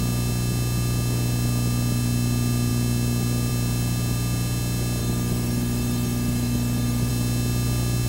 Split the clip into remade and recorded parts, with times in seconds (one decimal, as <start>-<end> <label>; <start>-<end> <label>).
0.0-5.0 recorded; 5.0-7.1 remade; 7.1-8.1 recorded